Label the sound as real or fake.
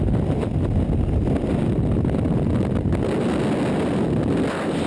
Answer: real